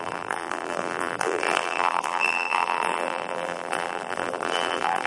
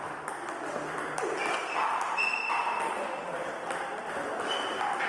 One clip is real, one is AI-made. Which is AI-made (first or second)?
first